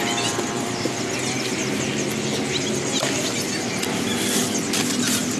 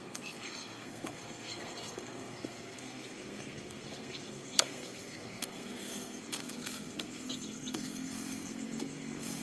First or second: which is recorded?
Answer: first